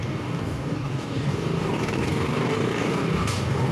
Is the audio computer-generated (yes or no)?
yes